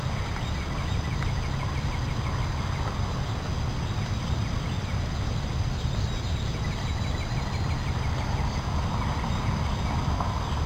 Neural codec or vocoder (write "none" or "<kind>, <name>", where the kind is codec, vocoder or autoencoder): none